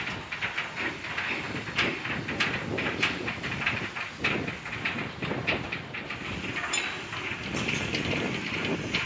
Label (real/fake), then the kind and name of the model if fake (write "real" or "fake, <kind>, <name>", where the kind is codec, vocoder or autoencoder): real